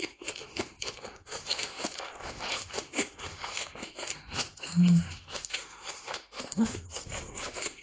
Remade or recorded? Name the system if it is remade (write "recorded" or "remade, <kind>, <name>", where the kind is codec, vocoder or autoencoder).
remade, autoencoder, DAC-VAE